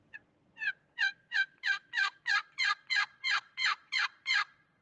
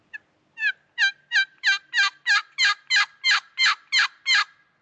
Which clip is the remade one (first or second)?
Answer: first